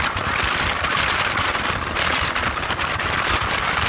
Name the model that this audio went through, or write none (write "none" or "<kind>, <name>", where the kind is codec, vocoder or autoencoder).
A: none